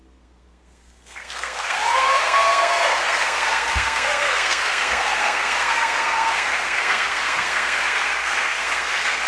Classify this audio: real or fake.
fake